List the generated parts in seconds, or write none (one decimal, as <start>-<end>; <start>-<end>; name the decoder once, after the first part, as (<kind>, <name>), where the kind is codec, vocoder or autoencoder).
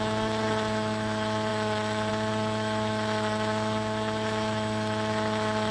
0.0-5.7 (autoencoder, DAC-VAE)